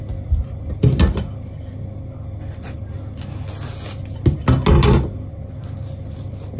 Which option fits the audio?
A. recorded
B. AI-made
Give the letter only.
A